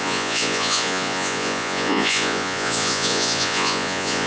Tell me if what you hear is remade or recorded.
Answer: remade